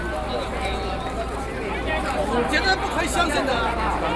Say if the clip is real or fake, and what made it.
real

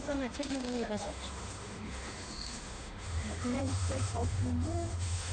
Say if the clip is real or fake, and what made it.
fake, autoencoder, DAC-VAE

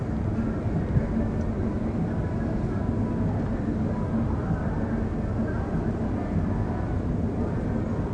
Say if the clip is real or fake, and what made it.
real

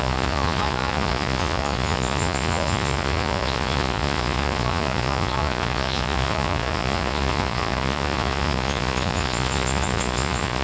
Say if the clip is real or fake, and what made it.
fake, vocoder, Vocos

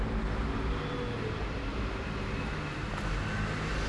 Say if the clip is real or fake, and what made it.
real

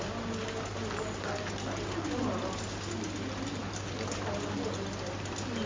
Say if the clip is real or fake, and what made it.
real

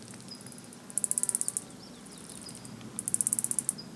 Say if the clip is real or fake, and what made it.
real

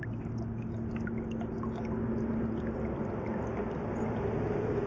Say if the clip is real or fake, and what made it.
real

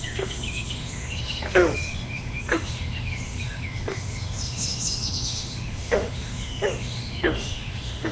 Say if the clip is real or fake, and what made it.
fake, autoencoder, DAC-VAE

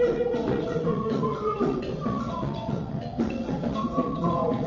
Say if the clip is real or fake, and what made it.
fake, vocoder, WaveNeXt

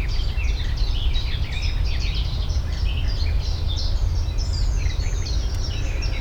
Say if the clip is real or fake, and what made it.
real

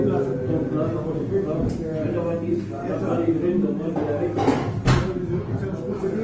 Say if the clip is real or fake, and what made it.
real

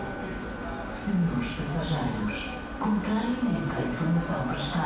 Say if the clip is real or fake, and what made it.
real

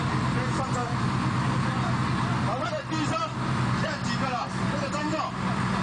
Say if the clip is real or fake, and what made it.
real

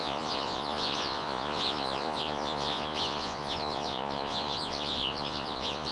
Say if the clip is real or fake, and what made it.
fake, vocoder, Vocos